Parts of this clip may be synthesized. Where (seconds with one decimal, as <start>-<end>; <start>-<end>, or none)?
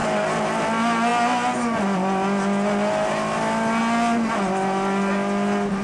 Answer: none